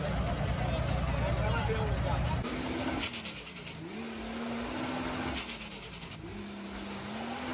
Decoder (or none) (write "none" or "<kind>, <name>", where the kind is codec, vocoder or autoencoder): none